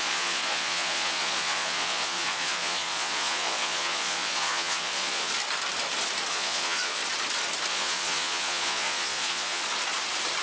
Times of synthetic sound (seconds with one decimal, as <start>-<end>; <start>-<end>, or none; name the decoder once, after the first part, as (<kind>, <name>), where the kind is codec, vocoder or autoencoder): 0.0-5.3 (vocoder, Vocos); 6.3-7.0; 7.7-9.6